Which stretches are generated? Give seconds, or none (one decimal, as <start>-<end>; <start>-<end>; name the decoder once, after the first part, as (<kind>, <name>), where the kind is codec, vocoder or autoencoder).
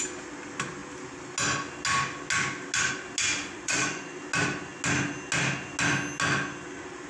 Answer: 3.4-4.2 (vocoder, Vocos)